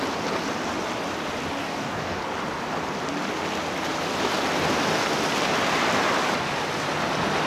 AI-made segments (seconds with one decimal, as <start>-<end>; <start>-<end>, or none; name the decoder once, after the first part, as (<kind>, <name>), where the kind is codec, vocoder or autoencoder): 1.6-2.2 (codec, DAC)